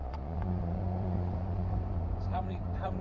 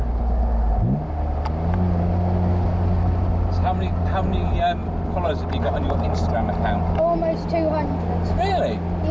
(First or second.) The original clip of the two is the second